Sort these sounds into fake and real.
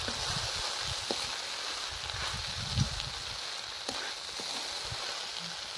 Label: real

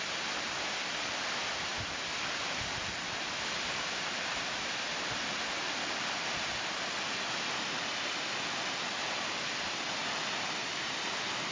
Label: fake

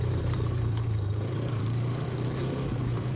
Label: fake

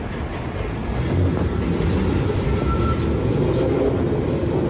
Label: fake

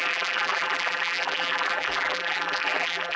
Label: fake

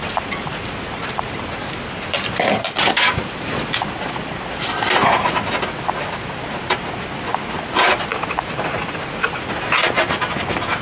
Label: fake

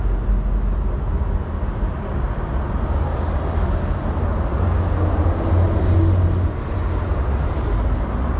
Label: real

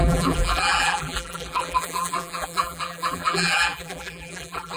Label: fake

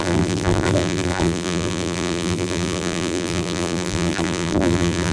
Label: fake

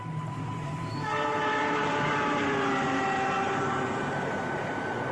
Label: fake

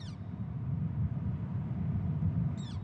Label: fake